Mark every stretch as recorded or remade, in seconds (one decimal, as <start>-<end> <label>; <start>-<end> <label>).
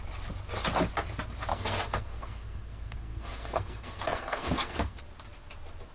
0.0-1.5 recorded; 1.5-5.0 remade; 5.0-5.9 recorded